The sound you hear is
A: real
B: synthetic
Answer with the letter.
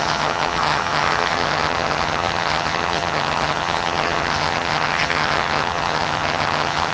B